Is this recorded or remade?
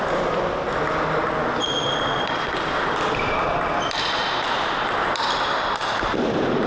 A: recorded